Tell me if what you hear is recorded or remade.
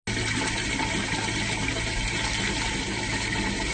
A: recorded